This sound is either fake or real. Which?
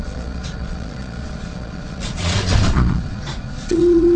fake